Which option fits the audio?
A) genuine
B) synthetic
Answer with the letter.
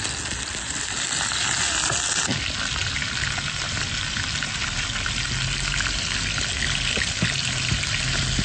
A